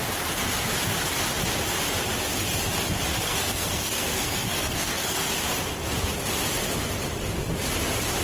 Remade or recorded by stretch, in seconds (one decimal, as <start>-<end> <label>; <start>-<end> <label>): 0.0-3.1 recorded; 3.1-5.3 remade; 5.3-8.2 recorded